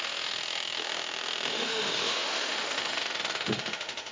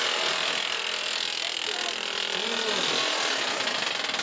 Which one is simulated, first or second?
first